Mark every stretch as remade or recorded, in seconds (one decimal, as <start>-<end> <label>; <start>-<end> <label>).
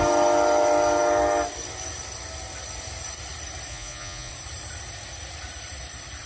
0.0-3.7 recorded; 3.7-4.3 remade; 4.3-6.3 recorded